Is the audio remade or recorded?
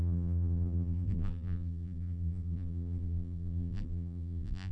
remade